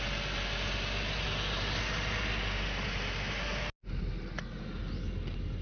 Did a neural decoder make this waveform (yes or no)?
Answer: no